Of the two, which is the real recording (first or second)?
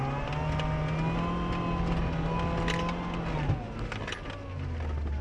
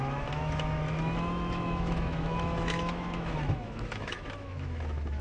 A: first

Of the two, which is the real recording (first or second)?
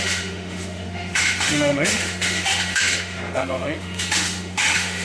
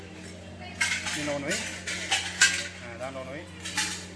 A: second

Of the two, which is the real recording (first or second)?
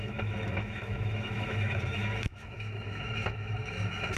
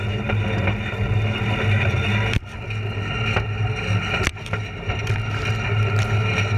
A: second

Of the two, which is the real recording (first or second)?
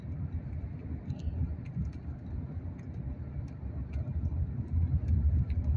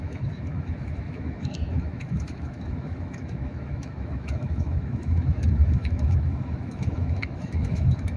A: first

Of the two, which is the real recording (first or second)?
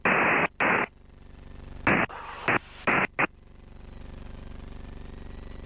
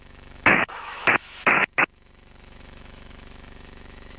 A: first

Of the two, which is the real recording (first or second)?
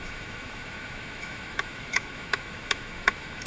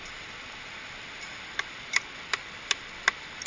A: second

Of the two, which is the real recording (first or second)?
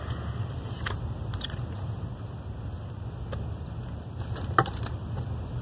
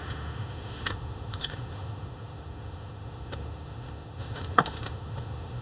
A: first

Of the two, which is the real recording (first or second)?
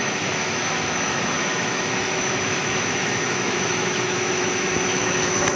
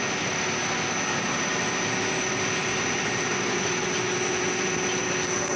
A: second